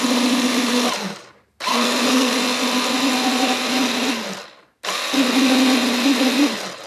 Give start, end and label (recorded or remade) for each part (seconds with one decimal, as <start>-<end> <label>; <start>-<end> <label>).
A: 0.0-1.7 recorded; 1.7-2.3 remade; 2.3-6.9 recorded